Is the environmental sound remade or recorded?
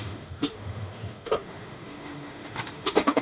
remade